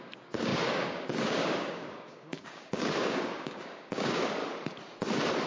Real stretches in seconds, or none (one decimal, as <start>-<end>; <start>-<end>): 4.4-5.5